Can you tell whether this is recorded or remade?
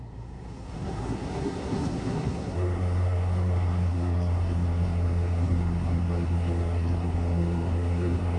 remade